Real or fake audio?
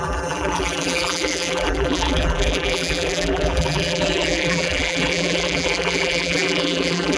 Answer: fake